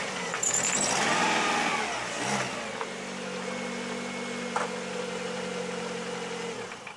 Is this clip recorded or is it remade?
recorded